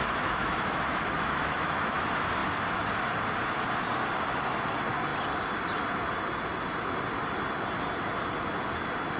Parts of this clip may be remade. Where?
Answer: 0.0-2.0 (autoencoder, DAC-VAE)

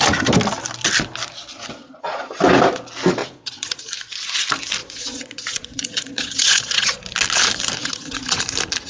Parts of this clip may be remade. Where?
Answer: 1.8-2.3 (vocoder, Vocos); 3.2-3.8; 4.8-7.0; 7.8-8.4

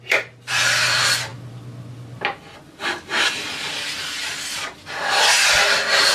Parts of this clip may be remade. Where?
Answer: none

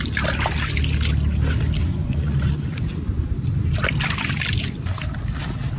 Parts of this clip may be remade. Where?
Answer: 1.8-3.3 (vocoder, Vocos)

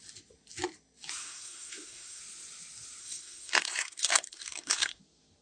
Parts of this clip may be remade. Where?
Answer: 1.2-2.2 (codec, SNAC); 3.0-5.0

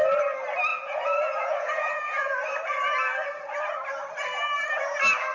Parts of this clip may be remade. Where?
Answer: 0.7-2.4 (vocoder, Vocos)

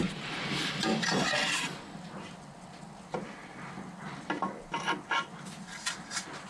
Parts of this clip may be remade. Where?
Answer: none

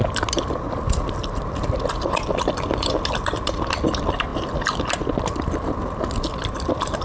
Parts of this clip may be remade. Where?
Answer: none